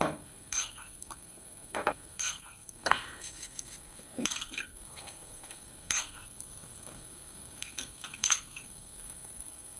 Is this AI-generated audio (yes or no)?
yes